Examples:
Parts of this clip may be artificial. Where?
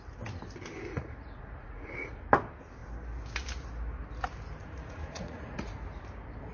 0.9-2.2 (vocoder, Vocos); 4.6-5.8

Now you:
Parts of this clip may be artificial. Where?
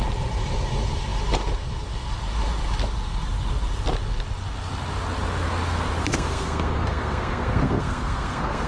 6.0-8.7 (codec, SNAC)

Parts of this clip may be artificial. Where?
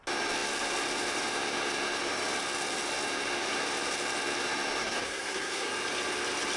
4.8-5.7 (codec, SNAC)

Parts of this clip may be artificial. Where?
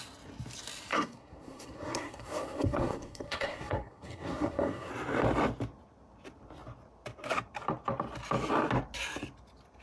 0.9-4.9 (codec, SNAC)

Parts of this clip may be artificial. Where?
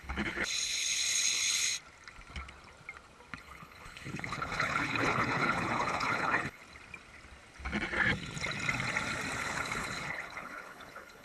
0.0-1.7 (codec, HILCodec); 3.4-6.6; 9.4-11.2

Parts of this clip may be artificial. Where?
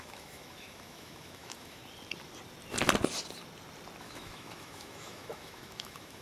0.0-1.8 (autoencoder, DAC-VAE); 4.0-6.2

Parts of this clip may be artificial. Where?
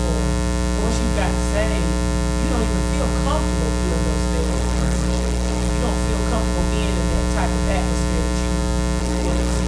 4.4-5.7 (codec, SNAC); 9.0-9.7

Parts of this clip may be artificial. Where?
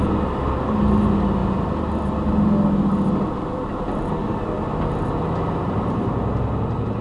none